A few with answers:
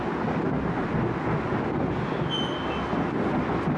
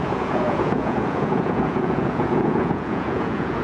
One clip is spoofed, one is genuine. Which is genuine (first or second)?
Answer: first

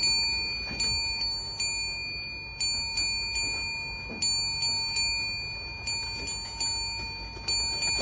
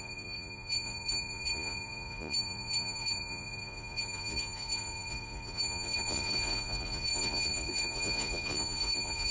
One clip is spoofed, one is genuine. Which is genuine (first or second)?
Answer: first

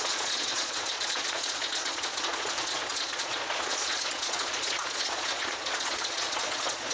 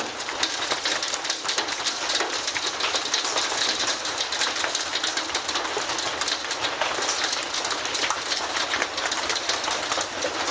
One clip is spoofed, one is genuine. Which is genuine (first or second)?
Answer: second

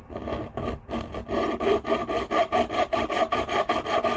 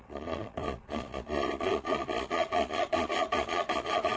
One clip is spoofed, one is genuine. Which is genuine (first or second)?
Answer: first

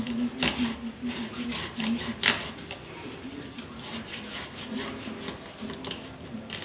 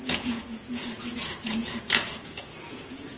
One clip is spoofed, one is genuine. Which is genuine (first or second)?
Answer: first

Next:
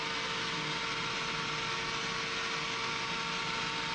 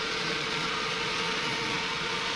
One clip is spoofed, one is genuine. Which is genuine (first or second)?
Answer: first